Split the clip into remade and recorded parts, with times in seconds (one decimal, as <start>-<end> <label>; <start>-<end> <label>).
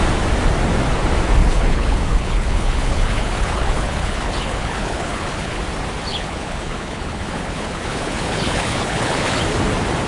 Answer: 0.0-1.4 recorded; 1.4-5.6 remade; 5.6-6.1 recorded; 6.1-9.4 remade; 9.4-10.1 recorded